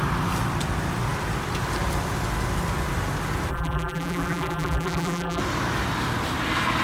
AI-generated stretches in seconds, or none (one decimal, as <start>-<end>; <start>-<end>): 3.5-5.4

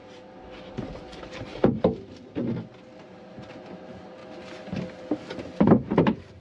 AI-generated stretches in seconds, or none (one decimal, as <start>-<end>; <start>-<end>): 0.0-1.4; 3.1-4.2; 5.4-6.4

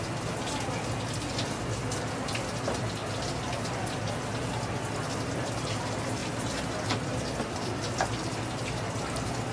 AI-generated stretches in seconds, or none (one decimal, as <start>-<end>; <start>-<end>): none

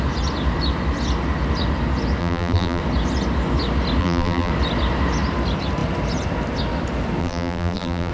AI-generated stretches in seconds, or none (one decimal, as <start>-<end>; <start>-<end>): 2.2-2.8; 4.0-4.5; 7.2-8.1

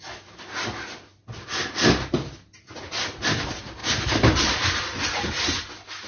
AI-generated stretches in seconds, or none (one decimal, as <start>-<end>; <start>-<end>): 3.8-5.3

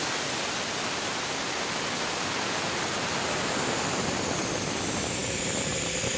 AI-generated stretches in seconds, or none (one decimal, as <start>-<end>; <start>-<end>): none